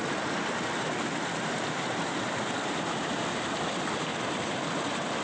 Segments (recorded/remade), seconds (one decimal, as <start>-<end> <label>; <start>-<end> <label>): 0.0-5.2 recorded